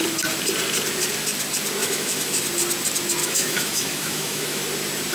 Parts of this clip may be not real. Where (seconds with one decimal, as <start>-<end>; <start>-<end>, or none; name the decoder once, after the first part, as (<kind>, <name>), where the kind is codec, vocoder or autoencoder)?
1.8-2.4 (autoencoder, DAC-VAE); 3.2-4.6